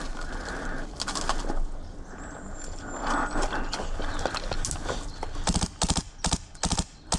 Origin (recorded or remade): recorded